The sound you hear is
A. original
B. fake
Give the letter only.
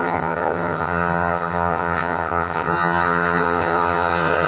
B